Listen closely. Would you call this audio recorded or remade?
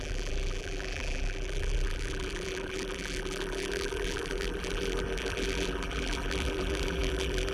remade